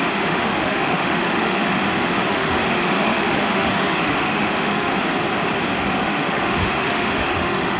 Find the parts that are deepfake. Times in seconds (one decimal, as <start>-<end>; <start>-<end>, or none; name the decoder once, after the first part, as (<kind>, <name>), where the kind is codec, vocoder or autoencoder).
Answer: 0.0-4.9 (autoencoder, DAC-VAE); 5.8-7.8